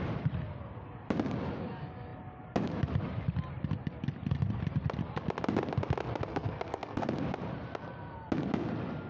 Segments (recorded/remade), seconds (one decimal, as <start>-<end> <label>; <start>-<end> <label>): 0.0-6.3 recorded; 6.3-7.1 remade; 7.1-9.1 recorded

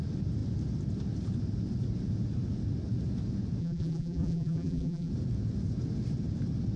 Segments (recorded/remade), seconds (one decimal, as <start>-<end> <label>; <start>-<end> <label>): 0.0-3.6 recorded; 3.6-5.1 remade; 5.1-6.8 recorded

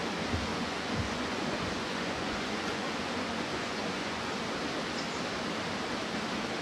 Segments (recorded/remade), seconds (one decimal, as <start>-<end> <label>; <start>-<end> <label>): 0.0-0.5 recorded; 0.5-4.3 remade; 4.3-6.6 recorded

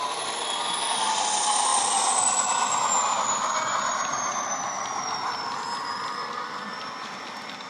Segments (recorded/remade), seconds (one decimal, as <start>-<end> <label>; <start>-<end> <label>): 0.0-1.7 remade; 1.7-5.5 recorded; 5.5-7.7 remade

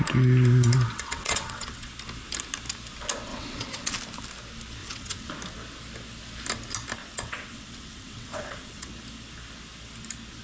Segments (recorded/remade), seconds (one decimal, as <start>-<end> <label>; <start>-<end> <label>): 0.0-0.9 recorded; 0.9-1.9 remade; 1.9-3.3 recorded; 3.3-3.9 remade; 3.9-4.8 recorded; 4.8-5.3 remade; 5.3-7.0 recorded; 7.0-8.9 remade; 8.9-10.4 recorded

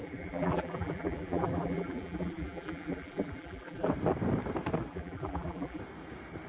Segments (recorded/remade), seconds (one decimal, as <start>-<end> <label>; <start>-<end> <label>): 0.0-3.9 remade; 3.9-4.9 recorded; 4.9-5.8 remade; 5.8-6.5 recorded

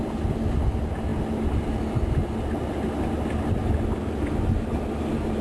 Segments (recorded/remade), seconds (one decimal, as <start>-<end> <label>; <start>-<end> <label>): 0.0-5.4 recorded